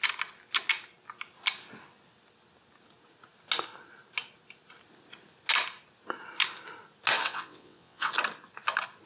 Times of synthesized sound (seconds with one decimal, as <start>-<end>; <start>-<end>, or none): 7.2-8.1